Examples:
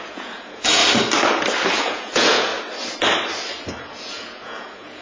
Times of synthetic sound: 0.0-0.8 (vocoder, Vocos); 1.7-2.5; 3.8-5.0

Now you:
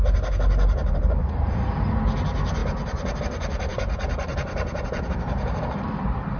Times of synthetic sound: 0.8-1.9 (vocoder, BigVGAN v2); 2.6-3.2; 3.7-6.4

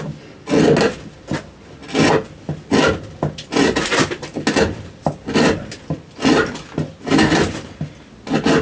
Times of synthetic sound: none

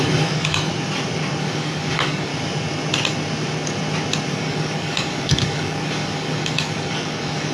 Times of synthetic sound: 0.0-0.7 (codec, DAC); 1.4-2.3; 4.3-7.5

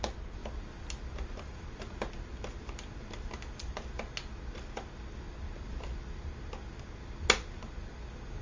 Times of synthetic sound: none